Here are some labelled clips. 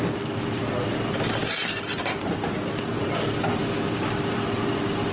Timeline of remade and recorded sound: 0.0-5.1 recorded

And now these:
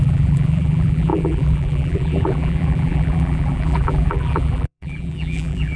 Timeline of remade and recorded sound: 0.0-5.8 remade

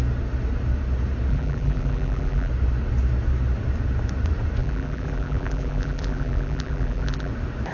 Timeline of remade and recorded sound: 0.0-1.3 recorded; 1.3-2.5 remade; 2.5-4.6 recorded; 4.6-7.3 remade; 7.3-7.7 recorded

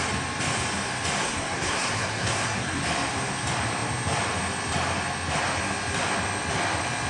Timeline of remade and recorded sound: 0.0-1.2 recorded; 1.2-2.8 remade; 2.8-7.1 recorded

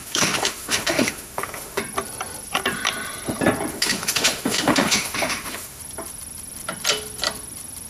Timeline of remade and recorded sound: 0.0-1.8 remade; 1.8-3.7 recorded; 3.7-5.8 remade; 5.8-7.9 recorded

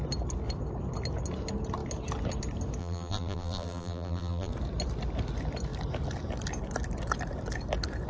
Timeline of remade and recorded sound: 0.0-2.8 recorded; 2.8-4.5 remade; 4.5-8.1 recorded